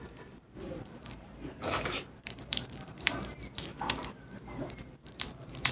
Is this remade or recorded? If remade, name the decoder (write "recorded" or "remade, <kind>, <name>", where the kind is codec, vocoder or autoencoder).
remade, vocoder, BigVGAN v2